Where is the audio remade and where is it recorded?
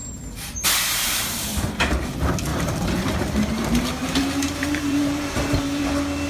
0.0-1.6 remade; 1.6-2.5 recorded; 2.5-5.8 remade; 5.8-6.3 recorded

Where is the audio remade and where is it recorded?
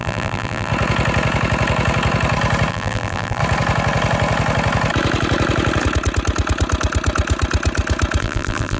0.0-0.7 remade; 0.7-2.7 recorded; 2.7-3.4 remade; 3.4-8.2 recorded; 8.2-8.8 remade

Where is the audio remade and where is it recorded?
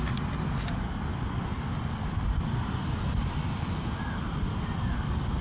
0.0-1.1 recorded; 1.1-3.7 remade; 3.7-5.4 recorded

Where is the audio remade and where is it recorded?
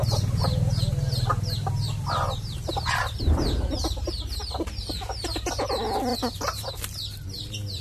0.0-4.7 remade; 4.7-6.1 recorded; 6.1-6.7 remade; 6.7-7.8 recorded